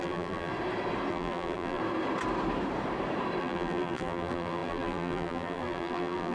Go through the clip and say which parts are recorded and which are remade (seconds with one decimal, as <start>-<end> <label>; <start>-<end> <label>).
0.0-0.5 remade; 0.5-1.1 recorded; 1.1-1.8 remade; 1.8-3.4 recorded; 3.4-6.3 remade